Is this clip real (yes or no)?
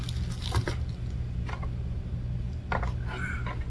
yes